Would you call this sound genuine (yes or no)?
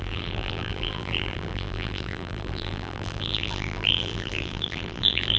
no